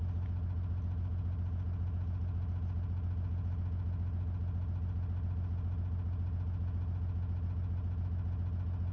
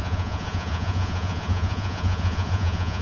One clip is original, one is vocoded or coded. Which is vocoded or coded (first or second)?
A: second